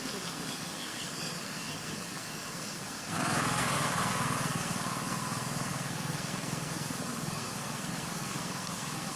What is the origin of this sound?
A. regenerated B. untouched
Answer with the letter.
A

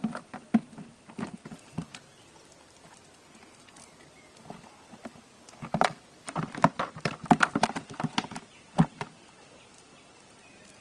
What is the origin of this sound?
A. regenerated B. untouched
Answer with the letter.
A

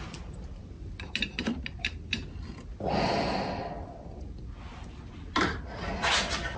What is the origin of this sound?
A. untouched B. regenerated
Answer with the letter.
A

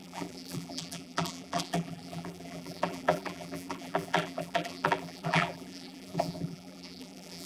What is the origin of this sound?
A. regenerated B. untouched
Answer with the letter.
A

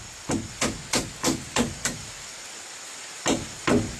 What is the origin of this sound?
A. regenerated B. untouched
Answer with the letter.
B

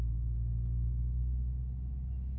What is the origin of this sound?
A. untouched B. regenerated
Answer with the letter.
A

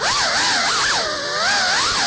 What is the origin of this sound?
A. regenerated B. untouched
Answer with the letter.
B